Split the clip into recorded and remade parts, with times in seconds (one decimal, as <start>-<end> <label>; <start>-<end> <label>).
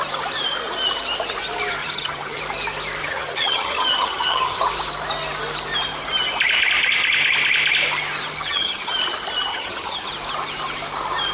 0.0-1.8 recorded; 1.8-2.4 remade; 2.4-3.0 recorded; 3.0-4.6 remade; 4.6-8.3 recorded; 8.3-8.9 remade; 8.9-9.5 recorded; 9.5-10.1 remade; 10.1-11.3 recorded